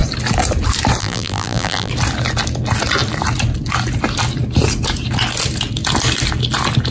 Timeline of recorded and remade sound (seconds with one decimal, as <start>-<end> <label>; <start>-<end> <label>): 0.0-1.0 recorded; 1.0-1.9 remade; 1.9-6.9 recorded